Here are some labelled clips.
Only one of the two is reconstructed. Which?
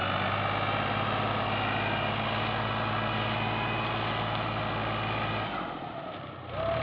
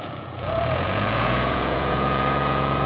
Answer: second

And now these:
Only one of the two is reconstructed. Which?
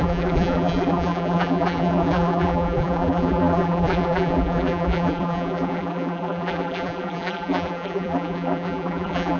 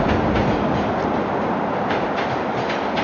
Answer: first